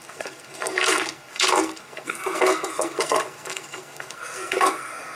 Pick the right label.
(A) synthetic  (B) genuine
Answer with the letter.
A